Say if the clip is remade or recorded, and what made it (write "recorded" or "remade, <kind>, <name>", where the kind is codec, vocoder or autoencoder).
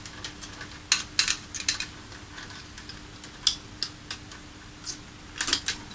recorded